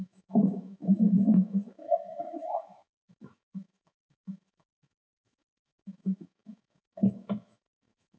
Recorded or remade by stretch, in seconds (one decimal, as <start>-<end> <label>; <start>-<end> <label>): 0.0-8.2 remade